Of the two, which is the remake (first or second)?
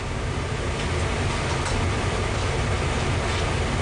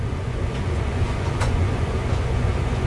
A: second